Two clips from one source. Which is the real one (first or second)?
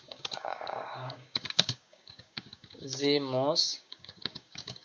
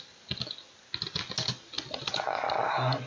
second